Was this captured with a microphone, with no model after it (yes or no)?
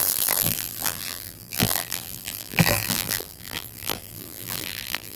no